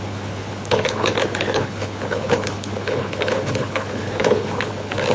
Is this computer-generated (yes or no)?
yes